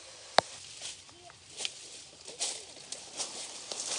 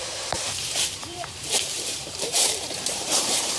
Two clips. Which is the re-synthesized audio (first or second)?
second